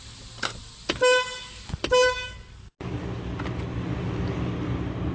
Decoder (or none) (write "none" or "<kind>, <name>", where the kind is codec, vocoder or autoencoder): none